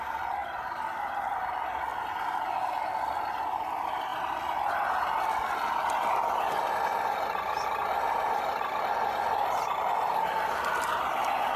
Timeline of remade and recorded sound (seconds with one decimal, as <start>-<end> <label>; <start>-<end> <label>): 0.0-1.9 remade; 1.9-2.5 recorded; 2.5-4.1 remade; 4.1-8.3 recorded; 8.3-11.6 remade